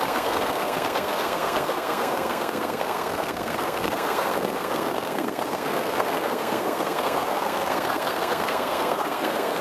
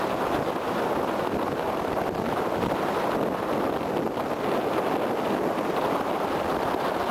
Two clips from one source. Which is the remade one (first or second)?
first